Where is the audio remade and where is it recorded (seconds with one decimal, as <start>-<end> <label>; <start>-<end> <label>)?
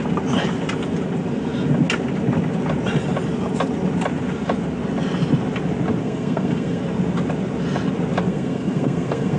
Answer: 0.0-6.0 recorded; 6.0-6.8 remade; 6.8-8.3 recorded; 8.3-9.4 remade